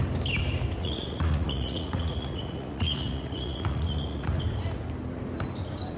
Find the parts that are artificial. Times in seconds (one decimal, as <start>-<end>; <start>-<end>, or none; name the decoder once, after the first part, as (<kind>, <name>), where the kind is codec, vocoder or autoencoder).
0.8-4.4 (vocoder, Vocos)

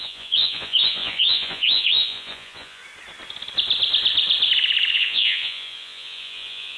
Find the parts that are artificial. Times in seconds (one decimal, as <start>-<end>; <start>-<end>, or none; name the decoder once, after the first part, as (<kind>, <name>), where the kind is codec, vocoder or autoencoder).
0.0-2.8 (vocoder, Vocos); 4.9-6.8